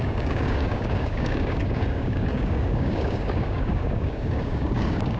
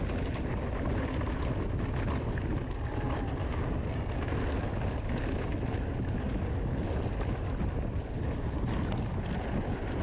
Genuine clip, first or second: second